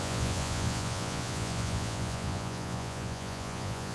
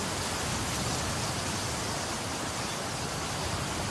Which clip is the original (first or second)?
second